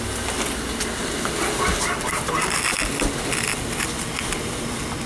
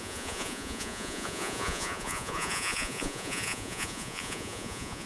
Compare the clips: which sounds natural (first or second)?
first